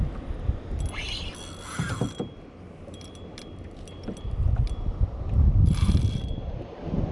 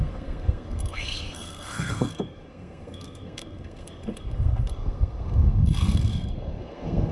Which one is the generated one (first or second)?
second